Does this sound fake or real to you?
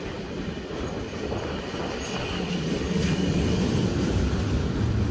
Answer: real